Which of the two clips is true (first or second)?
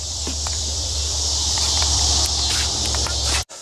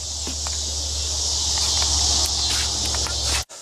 second